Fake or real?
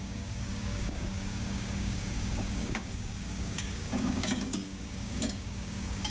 fake